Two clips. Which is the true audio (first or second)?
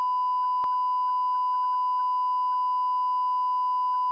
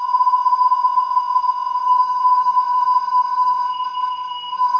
first